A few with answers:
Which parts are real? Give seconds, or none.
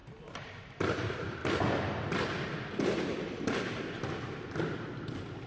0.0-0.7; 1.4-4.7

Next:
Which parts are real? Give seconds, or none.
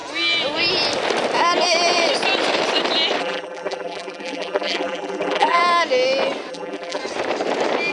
0.0-3.2; 5.6-6.5; 7.0-7.9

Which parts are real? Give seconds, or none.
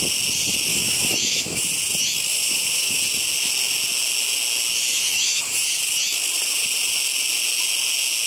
0.0-0.7; 1.6-2.3; 3.0-4.9; 5.4-8.3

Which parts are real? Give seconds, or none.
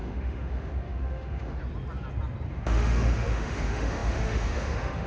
1.6-2.5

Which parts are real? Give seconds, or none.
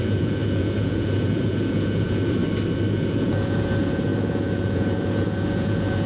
2.4-2.9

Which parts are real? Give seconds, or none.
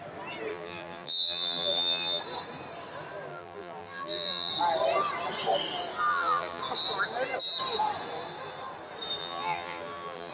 0.0-0.5; 2.2-3.3; 4.5-6.1; 6.6-9.2